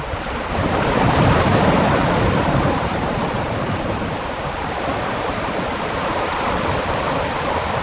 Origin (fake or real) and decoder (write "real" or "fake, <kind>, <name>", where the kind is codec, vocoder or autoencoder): real